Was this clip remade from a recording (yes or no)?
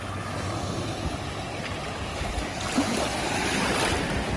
no